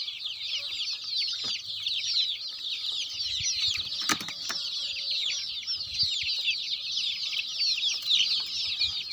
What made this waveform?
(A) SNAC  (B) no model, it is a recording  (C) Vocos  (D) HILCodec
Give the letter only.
B